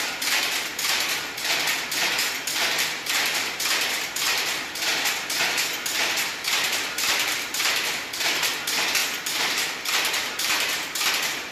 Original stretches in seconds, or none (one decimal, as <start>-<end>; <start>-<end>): 4.9-6.4